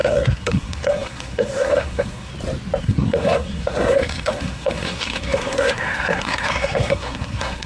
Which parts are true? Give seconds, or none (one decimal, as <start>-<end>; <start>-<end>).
2.3-2.8